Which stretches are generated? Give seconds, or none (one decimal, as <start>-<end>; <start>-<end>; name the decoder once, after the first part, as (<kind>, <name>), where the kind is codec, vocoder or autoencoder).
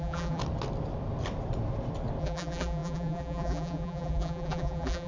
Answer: 0.0-0.4 (vocoder, BigVGAN v2); 2.2-5.1